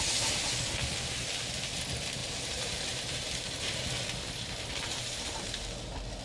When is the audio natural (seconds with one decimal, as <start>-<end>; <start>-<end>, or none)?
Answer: 0.0-2.2; 3.9-5.0; 5.6-6.2